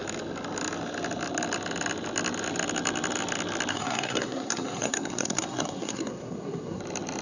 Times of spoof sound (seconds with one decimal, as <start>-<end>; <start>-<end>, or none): 3.7-6.8